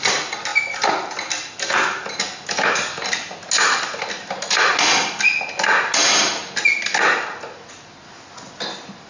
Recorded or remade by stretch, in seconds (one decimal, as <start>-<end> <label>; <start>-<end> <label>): 0.0-9.1 recorded

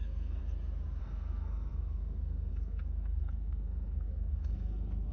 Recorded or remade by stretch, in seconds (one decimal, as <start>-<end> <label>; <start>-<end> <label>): 0.0-0.4 remade; 0.4-1.0 recorded; 1.0-5.1 remade

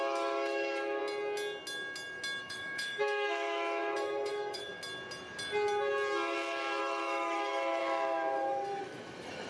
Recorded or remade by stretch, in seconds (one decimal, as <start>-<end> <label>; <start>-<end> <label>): 0.0-1.0 remade; 1.0-2.4 recorded; 2.4-4.7 remade; 4.7-6.8 recorded; 6.8-7.8 remade; 7.8-8.8 recorded; 8.8-9.5 remade

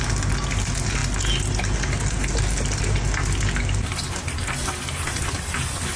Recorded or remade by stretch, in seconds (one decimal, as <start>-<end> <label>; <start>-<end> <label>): 0.0-6.0 recorded

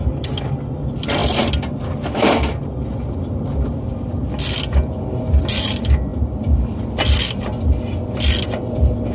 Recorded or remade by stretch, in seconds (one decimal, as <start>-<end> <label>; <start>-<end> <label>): 0.0-1.2 remade; 1.2-5.6 recorded; 5.6-6.1 remade; 6.1-8.6 recorded; 8.6-9.1 remade

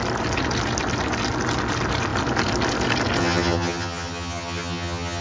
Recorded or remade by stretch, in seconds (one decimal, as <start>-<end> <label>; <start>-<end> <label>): 0.0-3.2 recorded; 3.2-5.2 remade

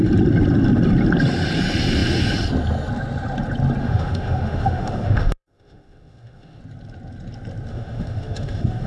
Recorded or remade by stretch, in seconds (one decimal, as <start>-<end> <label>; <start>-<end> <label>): 0.0-3.8 recorded; 3.8-6.6 remade; 6.6-7.7 recorded; 7.7-8.9 remade

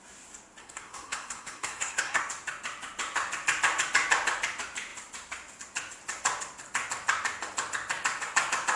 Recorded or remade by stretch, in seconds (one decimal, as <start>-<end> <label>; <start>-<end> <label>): 0.0-0.6 recorded; 0.6-2.2 remade; 2.2-8.8 recorded